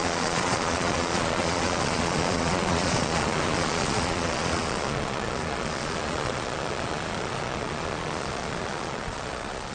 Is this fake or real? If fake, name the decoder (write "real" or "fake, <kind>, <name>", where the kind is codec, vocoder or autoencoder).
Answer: fake, vocoder, Vocos